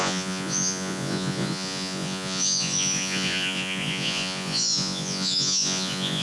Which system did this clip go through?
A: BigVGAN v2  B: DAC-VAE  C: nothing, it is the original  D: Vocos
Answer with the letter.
D